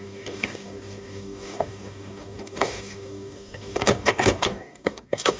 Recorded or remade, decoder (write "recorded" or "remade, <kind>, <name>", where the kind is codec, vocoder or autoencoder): remade, codec, DAC